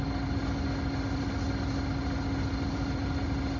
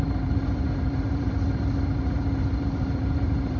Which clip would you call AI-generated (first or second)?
second